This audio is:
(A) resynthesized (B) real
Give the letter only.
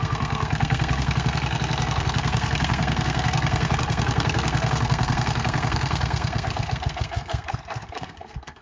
A